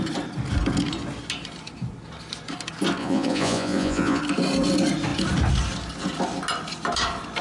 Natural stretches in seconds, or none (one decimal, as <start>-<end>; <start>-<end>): 0.0-3.0; 4.2-7.4